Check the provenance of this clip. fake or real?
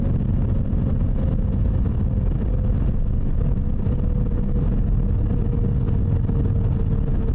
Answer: real